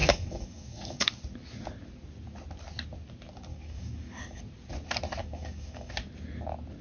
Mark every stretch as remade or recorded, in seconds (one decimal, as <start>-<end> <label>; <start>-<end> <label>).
0.0-1.1 remade; 1.1-3.5 recorded; 3.5-4.4 remade; 4.4-5.2 recorded; 5.2-5.9 remade; 5.9-6.8 recorded